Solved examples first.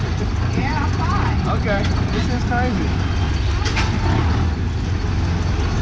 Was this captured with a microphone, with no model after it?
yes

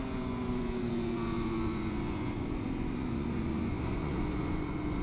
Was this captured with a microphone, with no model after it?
no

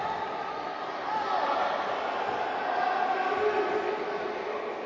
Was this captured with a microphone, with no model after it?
yes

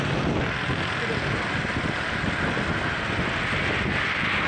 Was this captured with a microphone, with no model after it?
yes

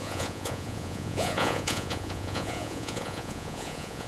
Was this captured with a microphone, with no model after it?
no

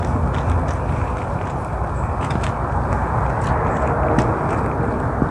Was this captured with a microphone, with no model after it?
yes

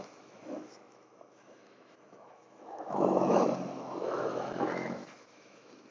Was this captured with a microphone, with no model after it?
no